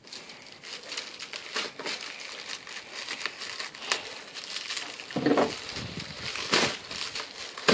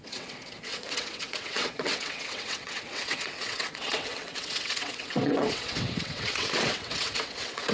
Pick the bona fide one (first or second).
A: first